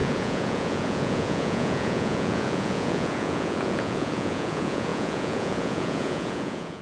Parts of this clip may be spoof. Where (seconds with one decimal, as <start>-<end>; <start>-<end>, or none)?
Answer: 0.0-6.8